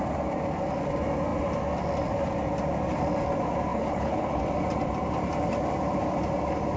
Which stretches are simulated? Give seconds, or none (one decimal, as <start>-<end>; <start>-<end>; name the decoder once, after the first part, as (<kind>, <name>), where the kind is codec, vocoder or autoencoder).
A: 3.7-4.4 (codec, HILCodec)